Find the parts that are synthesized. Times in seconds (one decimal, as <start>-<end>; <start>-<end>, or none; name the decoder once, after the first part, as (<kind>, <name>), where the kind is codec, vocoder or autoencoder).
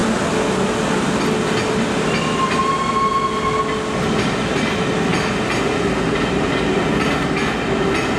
none